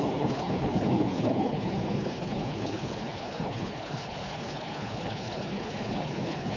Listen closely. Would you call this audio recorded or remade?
remade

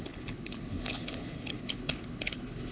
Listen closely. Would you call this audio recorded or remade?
remade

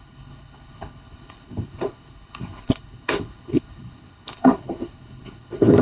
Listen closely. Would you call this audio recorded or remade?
remade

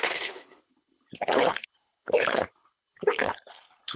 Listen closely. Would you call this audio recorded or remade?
remade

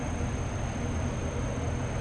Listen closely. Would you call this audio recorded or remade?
recorded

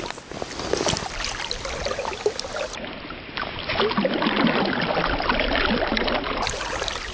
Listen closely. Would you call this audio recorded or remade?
recorded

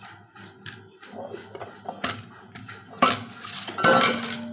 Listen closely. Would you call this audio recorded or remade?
recorded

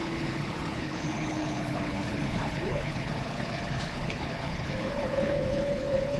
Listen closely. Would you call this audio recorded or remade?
remade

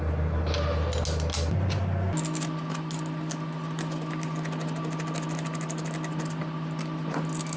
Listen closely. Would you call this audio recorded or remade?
recorded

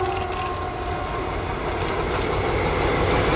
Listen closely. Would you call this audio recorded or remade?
recorded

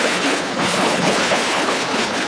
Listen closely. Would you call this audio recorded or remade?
remade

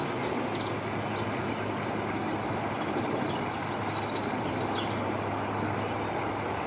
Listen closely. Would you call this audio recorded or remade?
recorded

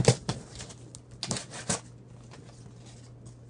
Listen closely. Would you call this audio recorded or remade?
recorded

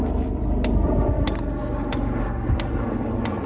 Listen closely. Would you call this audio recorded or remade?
recorded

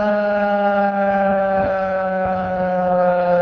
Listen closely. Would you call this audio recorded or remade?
remade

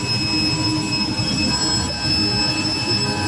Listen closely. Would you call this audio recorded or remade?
recorded